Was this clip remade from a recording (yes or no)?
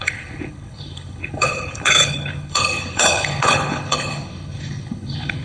yes